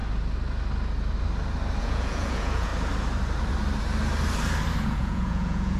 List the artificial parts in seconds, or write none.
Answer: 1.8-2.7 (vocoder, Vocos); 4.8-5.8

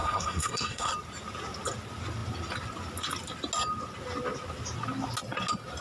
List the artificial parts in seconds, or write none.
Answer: 0.0-0.9 (codec, SNAC)

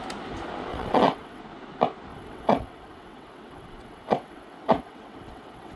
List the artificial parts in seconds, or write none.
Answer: 0.7-1.4 (vocoder, WaveNeXt); 2.1-5.8

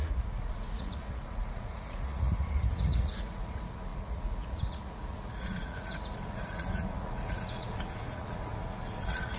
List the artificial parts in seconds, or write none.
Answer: 0.0-9.4 (vocoder, Vocos)

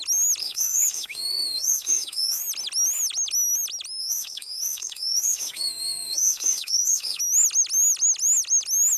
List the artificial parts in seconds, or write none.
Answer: 0.4-2.4 (autoencoder, DAC-VAE); 4.0-7.2

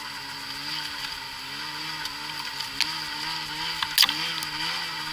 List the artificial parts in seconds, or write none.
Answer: none

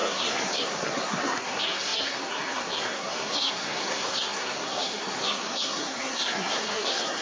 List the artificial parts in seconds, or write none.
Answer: 0.0-7.2 (codec, SNAC)